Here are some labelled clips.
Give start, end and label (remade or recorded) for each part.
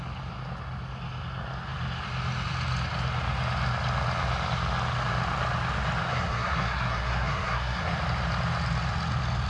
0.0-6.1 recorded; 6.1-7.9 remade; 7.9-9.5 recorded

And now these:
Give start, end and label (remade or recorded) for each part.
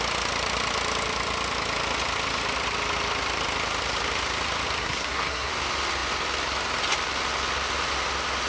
0.0-4.8 recorded; 4.8-5.5 remade; 5.5-8.5 recorded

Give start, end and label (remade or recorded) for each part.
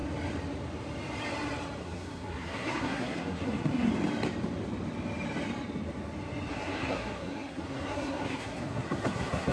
0.0-1.8 recorded; 1.8-3.9 remade; 3.9-6.5 recorded; 6.5-9.5 remade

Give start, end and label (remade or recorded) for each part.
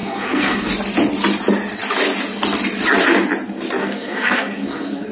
0.0-0.7 remade; 0.7-3.8 recorded; 3.8-5.1 remade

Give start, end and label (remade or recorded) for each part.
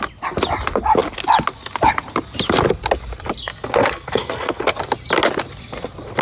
0.0-3.4 recorded; 3.4-4.8 remade; 4.8-6.2 recorded